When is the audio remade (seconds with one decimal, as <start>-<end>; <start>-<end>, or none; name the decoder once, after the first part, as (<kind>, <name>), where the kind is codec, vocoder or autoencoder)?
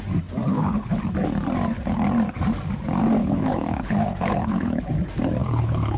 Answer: 0.5-1.0 (codec, HILCodec); 3.2-4.9; 5.4-6.0